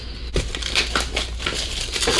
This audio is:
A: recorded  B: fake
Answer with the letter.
A